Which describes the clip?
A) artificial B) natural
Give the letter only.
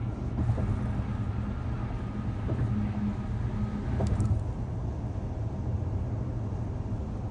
B